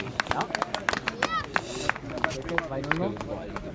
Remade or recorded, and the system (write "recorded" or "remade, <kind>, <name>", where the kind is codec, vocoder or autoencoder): recorded